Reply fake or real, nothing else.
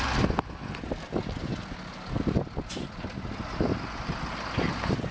real